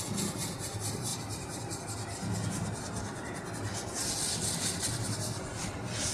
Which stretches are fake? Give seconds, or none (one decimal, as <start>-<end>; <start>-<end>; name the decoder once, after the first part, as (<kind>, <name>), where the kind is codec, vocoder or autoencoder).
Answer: 1.1-1.8 (vocoder, BigVGAN v2)